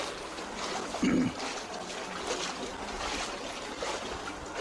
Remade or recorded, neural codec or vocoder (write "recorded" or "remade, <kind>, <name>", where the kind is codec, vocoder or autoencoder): recorded